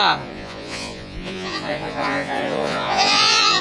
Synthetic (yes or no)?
yes